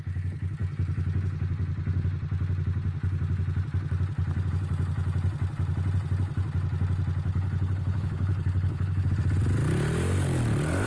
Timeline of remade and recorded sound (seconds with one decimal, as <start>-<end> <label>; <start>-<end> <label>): 0.0-7.3 recorded; 7.3-9.1 remade; 9.1-10.9 recorded